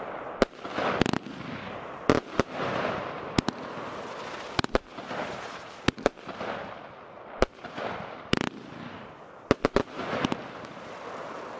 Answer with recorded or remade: recorded